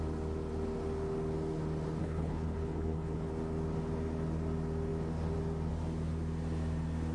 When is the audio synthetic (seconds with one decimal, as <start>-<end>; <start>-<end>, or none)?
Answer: 2.0-3.3